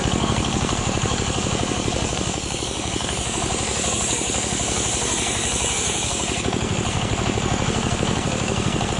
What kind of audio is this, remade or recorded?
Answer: remade